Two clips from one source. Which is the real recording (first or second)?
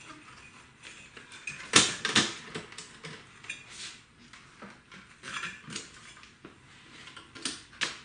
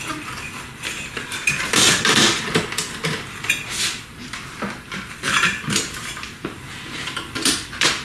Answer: first